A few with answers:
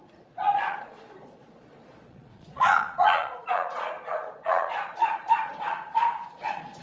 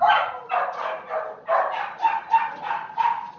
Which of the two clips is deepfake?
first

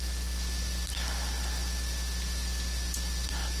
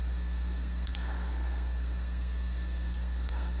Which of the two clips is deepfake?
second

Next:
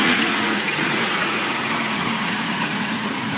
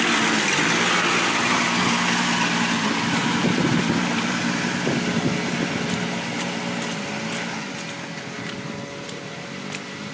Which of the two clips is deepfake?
first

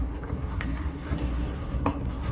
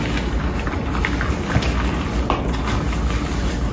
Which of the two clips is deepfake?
first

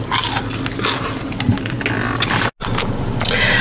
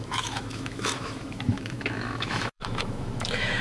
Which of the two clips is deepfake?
second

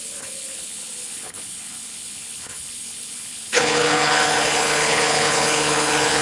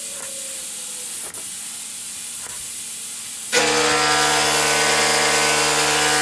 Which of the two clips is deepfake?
first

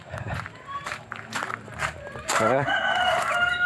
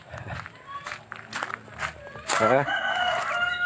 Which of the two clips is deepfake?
first